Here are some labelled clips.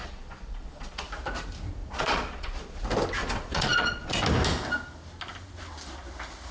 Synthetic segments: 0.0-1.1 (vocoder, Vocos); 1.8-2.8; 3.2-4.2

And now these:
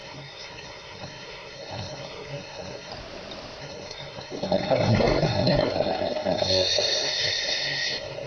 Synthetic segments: 0.0-2.9 (codec, SNAC); 3.6-8.3

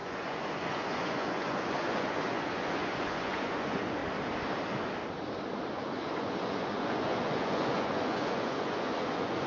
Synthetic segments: 0.0-4.0 (vocoder, Vocos); 5.7-9.5

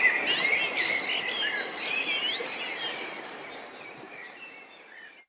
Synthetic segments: none

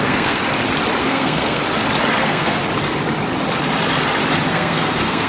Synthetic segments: 0.0-0.4 (codec, SNAC); 1.0-1.6; 2.2-2.6; 4.5-5.3

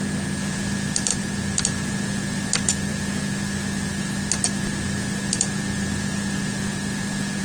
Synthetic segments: none

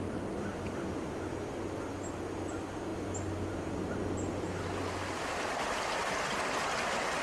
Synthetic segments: none

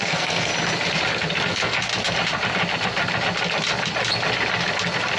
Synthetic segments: 0.0-0.5 (codec, SNAC); 1.5-1.9